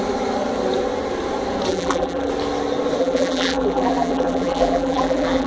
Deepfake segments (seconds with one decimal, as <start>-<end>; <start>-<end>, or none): 1.7-2.3; 3.0-5.5

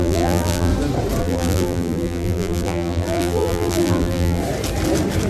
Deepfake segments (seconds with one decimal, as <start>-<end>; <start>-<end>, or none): 0.0-0.7; 1.2-4.4

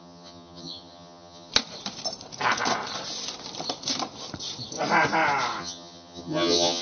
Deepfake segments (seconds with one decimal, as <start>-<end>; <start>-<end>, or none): 0.0-1.5; 5.6-6.8

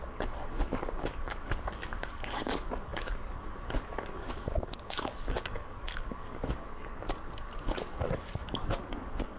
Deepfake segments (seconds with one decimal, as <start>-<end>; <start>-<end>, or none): 0.0-9.4

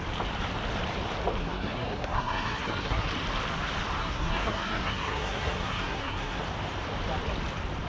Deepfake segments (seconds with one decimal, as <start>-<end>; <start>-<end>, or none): 1.4-3.1; 4.0-6.4

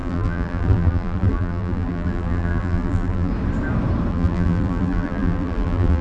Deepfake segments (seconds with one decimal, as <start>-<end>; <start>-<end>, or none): 0.0-3.3; 4.1-6.0